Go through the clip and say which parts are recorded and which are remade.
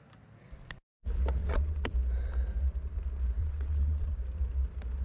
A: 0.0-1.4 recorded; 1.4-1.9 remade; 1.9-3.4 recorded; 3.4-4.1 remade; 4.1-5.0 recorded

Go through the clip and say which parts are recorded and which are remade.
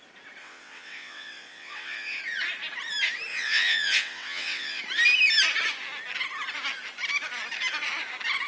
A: 0.0-0.4 recorded; 0.4-2.2 remade; 2.2-3.3 recorded; 3.3-4.8 remade; 4.8-8.5 recorded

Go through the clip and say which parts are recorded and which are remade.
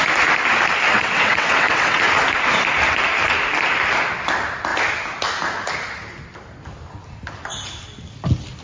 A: 0.0-0.9 recorded; 0.9-2.0 remade; 2.0-8.6 recorded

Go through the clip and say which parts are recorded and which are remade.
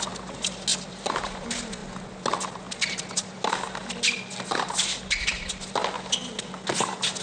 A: 0.0-7.2 recorded